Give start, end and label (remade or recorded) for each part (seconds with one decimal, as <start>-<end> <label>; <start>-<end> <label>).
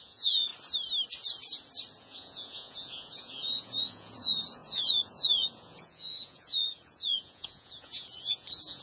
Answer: 0.0-0.5 remade; 0.5-2.0 recorded; 2.0-8.8 remade